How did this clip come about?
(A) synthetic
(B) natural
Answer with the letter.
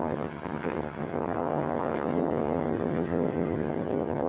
A